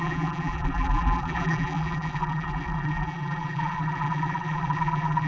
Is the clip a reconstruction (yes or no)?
yes